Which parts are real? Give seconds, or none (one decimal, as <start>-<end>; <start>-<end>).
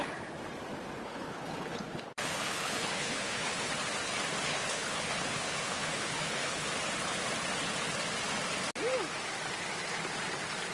0.0-1.0; 3.7-4.5; 6.7-10.7